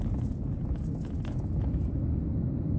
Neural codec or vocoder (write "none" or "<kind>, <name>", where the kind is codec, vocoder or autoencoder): none